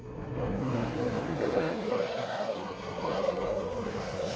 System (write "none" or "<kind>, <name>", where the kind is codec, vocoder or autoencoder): codec, SNAC